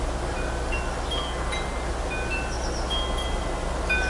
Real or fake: real